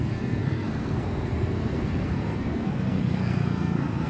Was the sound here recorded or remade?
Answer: remade